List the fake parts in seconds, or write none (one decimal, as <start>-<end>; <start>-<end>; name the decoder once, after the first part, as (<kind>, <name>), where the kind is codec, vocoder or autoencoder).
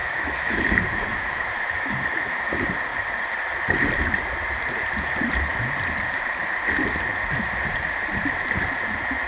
0.0-2.5 (autoencoder, DAC-VAE)